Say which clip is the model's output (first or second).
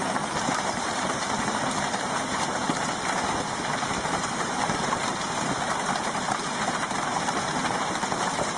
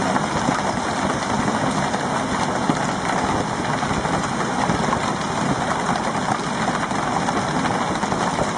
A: first